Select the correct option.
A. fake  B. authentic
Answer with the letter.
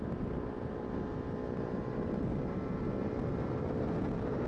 B